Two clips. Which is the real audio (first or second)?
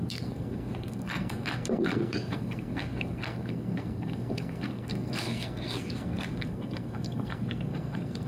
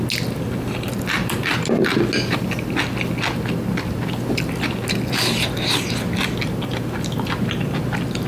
second